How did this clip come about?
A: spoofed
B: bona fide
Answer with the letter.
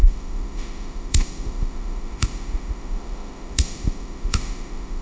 A